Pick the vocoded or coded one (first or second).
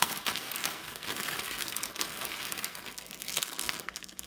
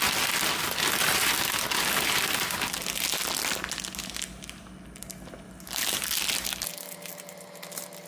first